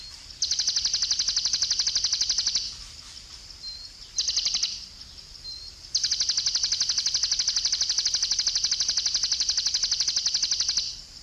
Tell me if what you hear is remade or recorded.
recorded